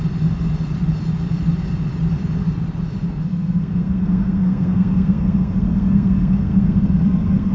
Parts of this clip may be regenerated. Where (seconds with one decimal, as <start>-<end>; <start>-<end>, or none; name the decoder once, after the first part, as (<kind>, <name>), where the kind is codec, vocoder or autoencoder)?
3.1-7.5 (codec, SNAC)